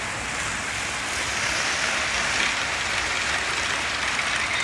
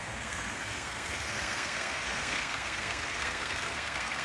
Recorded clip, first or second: first